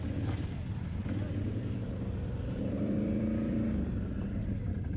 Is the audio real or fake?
fake